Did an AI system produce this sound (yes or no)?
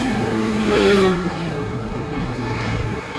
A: yes